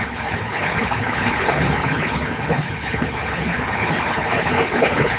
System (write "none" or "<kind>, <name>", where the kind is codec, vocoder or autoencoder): codec, HILCodec